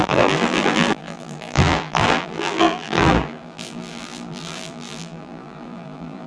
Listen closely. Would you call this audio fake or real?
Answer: fake